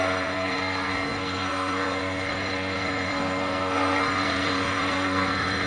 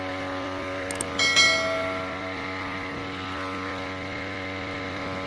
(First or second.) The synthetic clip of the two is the first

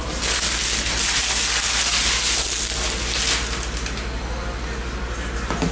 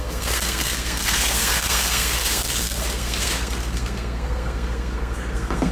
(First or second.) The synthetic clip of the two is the second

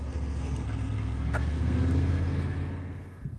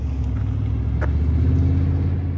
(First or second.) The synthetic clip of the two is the first